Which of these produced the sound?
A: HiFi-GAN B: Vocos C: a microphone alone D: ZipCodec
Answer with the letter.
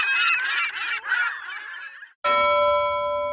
C